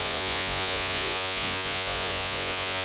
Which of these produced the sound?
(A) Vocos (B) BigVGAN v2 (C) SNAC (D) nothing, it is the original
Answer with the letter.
A